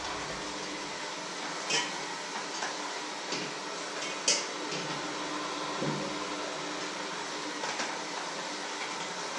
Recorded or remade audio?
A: recorded